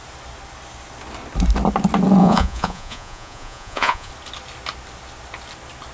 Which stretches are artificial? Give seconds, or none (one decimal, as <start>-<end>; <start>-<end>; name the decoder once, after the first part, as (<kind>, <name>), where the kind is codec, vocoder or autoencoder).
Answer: 2.2-4.1 (vocoder, Vocos)